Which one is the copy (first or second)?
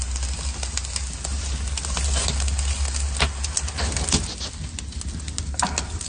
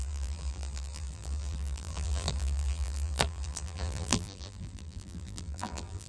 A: second